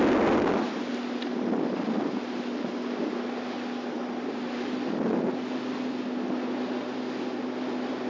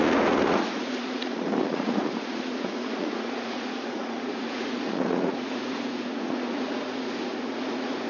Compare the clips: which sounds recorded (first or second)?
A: first